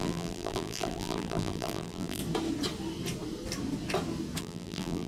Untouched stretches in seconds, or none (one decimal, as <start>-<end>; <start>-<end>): 2.2-4.4